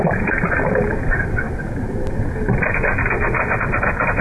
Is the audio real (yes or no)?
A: yes